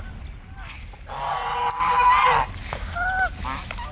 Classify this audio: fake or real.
real